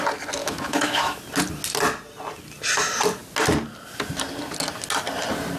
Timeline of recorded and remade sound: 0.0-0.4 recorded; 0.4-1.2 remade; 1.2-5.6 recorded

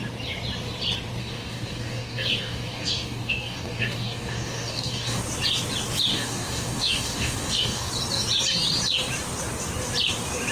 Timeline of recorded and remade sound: 0.0-1.2 recorded; 1.2-5.2 remade; 5.2-6.1 recorded; 6.1-7.9 remade; 7.9-10.5 recorded

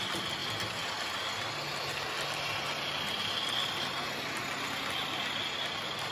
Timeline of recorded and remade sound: 0.0-6.1 recorded